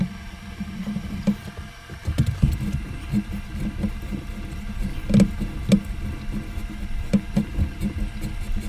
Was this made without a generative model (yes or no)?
yes